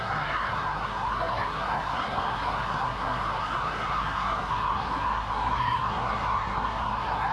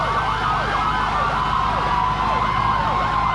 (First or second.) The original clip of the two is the second